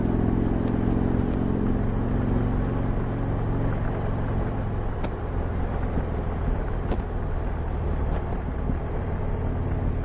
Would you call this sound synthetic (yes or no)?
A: no